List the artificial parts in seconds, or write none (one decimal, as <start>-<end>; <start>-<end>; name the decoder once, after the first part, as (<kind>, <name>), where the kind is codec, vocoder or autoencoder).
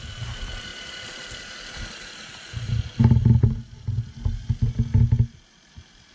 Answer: 0.7-1.6 (vocoder, BigVGAN v2)